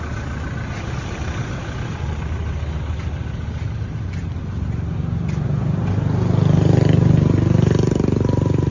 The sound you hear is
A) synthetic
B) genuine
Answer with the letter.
B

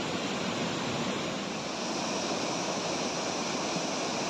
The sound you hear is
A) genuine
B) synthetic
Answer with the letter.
A